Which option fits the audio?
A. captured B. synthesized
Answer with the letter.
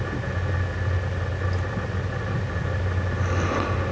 A